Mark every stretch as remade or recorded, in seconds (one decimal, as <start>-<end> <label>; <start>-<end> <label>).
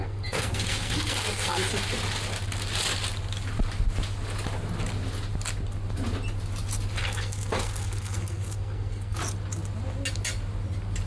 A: 0.0-1.7 remade; 1.7-7.0 recorded; 7.0-9.2 remade; 9.2-11.1 recorded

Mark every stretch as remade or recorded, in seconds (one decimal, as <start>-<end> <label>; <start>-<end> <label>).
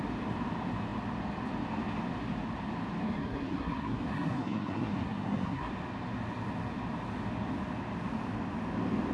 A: 0.0-3.0 recorded; 3.0-5.7 remade; 5.7-9.1 recorded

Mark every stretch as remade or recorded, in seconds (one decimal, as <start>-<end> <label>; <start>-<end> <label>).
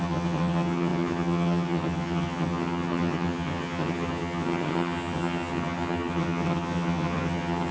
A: 0.0-7.7 remade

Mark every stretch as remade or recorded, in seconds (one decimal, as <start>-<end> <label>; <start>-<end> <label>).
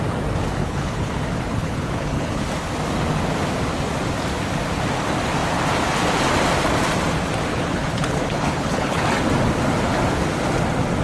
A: 0.0-0.6 recorded; 0.6-1.1 remade; 1.1-1.5 recorded; 1.5-2.4 remade; 2.4-7.5 recorded; 7.5-9.0 remade; 9.0-11.0 recorded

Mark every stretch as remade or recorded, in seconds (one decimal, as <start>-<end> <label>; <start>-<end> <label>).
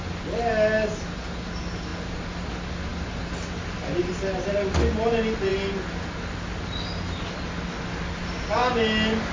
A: 0.0-9.3 recorded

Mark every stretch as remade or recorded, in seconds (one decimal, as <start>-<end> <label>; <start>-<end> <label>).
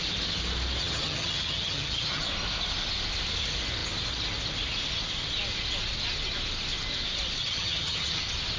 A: 0.0-0.8 recorded; 0.8-2.2 remade; 2.2-7.4 recorded; 7.4-8.2 remade; 8.2-8.6 recorded